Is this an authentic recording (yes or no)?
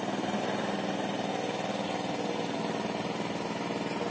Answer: yes